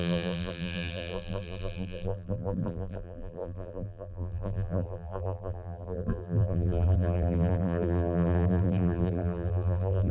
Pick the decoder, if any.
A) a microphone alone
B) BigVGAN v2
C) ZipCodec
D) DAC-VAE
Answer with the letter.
B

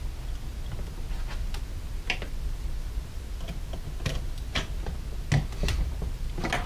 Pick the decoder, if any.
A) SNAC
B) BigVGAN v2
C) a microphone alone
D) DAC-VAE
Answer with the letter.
C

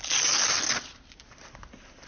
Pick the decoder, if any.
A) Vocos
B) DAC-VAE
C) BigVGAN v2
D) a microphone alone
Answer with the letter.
D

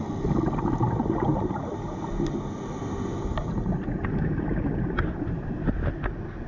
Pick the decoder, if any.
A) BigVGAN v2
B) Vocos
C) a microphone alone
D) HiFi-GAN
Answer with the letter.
C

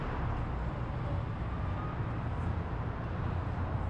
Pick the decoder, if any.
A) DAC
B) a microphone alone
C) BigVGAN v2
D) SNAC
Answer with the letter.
B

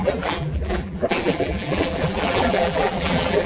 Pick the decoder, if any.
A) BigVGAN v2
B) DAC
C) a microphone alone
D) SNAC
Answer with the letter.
A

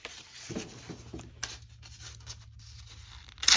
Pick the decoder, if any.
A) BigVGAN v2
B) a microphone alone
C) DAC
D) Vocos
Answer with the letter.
B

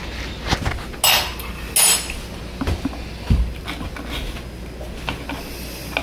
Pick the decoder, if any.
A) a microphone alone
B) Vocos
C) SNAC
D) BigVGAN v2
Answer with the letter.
A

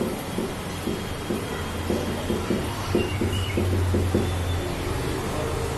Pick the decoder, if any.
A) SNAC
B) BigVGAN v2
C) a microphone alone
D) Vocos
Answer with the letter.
C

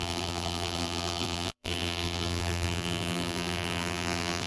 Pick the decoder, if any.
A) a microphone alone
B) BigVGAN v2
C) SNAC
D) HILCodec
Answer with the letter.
B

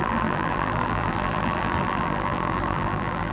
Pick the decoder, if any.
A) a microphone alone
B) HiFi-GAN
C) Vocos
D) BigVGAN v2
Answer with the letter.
D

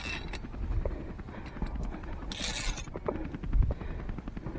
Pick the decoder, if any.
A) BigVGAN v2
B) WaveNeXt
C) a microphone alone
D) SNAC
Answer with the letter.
C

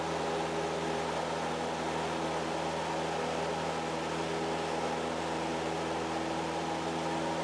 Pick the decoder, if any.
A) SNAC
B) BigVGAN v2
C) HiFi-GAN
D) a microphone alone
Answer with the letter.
D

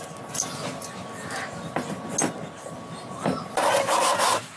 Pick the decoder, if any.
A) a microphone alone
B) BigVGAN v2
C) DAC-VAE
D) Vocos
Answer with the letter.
A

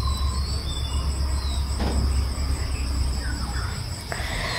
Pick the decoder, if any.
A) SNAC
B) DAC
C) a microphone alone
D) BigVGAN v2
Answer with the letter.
C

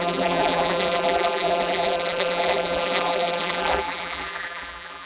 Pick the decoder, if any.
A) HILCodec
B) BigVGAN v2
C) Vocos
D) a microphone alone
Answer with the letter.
B